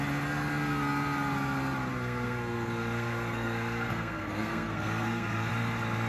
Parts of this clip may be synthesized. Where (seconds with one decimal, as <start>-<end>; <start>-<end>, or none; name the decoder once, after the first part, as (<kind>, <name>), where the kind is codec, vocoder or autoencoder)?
1.9-5.5 (codec, SNAC)